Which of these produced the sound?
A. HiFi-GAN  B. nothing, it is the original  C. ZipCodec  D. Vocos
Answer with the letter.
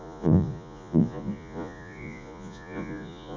D